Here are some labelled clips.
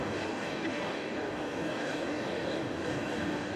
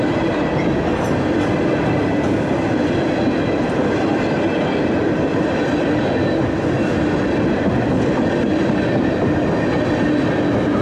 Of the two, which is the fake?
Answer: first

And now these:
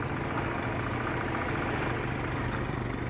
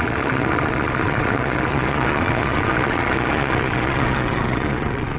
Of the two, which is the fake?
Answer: second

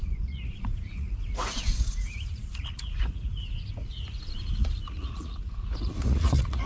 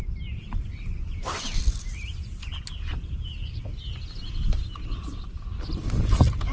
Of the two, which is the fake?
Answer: first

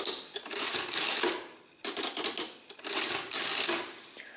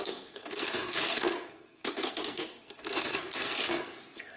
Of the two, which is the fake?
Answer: second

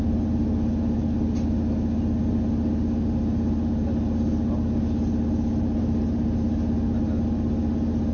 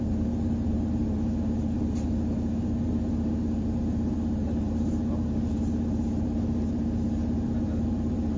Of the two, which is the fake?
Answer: second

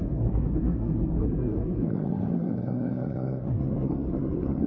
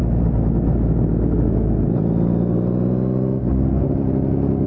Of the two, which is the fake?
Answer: first